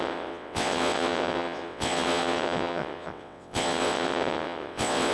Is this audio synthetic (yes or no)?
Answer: yes